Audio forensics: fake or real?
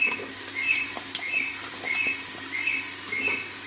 real